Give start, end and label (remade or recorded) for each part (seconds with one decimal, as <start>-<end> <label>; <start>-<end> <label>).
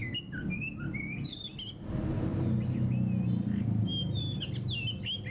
0.0-5.3 recorded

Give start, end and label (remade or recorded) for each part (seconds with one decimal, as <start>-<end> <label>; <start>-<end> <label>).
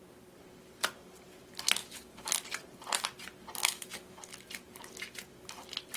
0.0-1.8 recorded; 1.8-2.3 remade; 2.3-3.6 recorded; 3.6-4.2 remade; 4.2-6.0 recorded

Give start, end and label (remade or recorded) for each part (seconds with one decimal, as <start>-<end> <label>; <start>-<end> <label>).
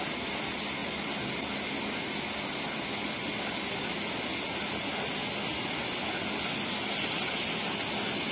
0.0-8.3 recorded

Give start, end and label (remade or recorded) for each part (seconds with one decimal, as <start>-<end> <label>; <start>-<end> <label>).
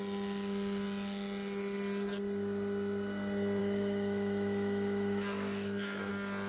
0.0-3.6 recorded; 3.6-6.1 remade; 6.1-6.5 recorded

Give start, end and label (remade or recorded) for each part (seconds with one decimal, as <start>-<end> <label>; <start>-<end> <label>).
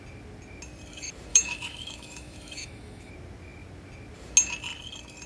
0.0-1.3 recorded; 1.3-3.1 remade; 3.1-5.3 recorded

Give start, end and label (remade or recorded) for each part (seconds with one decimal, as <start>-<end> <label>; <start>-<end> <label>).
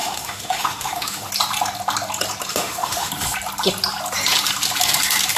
0.0-1.3 remade; 1.3-2.5 recorded; 2.5-3.1 remade; 3.1-5.4 recorded